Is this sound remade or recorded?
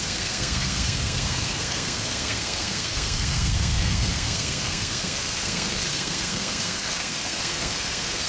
remade